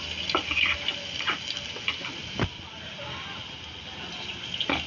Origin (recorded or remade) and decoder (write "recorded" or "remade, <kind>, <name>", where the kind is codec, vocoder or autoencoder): recorded